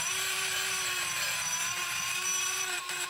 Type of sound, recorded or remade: remade